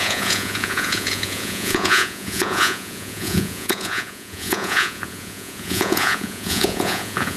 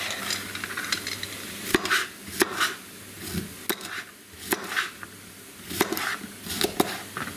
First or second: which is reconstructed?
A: first